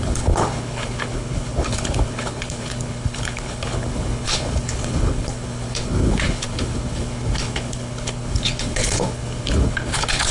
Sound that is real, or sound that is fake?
fake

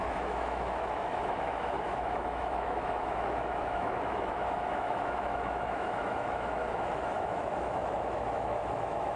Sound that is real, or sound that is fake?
fake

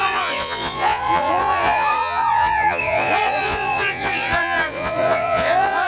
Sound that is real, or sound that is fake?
fake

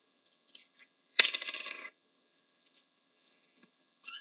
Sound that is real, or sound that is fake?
fake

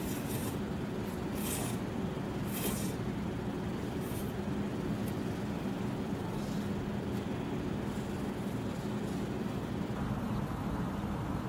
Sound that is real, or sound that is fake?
real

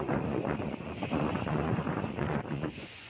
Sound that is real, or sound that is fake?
fake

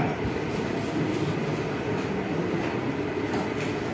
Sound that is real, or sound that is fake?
fake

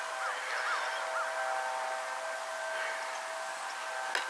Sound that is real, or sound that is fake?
real